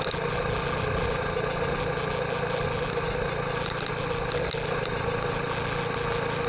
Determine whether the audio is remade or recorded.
recorded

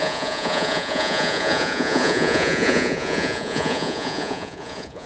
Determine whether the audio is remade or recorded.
remade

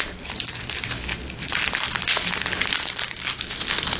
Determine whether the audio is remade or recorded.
recorded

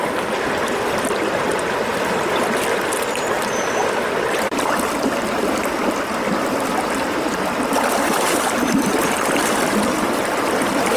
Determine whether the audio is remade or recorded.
recorded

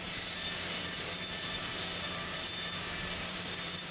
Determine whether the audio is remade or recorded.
remade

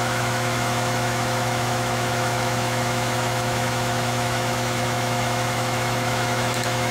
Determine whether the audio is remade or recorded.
remade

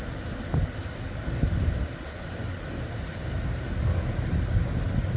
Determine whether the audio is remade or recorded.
recorded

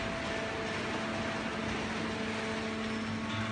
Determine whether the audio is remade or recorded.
recorded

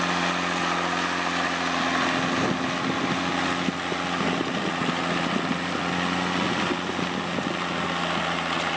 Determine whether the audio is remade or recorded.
recorded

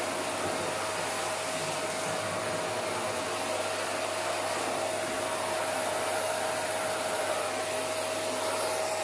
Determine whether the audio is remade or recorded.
recorded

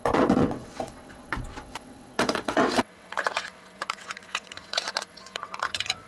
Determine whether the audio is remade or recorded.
remade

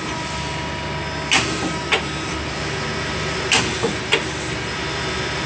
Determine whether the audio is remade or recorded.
recorded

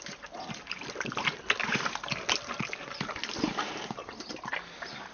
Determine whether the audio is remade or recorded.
recorded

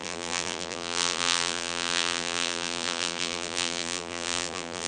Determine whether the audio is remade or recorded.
remade